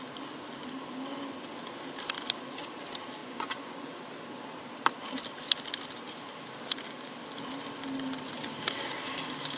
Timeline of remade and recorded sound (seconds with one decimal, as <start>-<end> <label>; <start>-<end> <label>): 0.0-3.2 recorded; 3.2-3.9 remade; 3.9-9.6 recorded